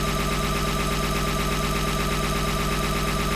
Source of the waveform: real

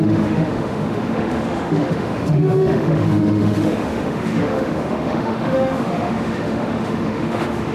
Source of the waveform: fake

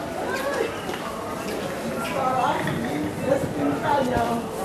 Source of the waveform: real